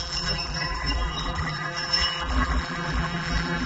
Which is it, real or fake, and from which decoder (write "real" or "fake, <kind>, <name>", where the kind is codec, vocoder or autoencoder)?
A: fake, vocoder, BigVGAN v2